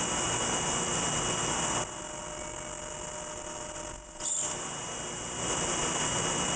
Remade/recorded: recorded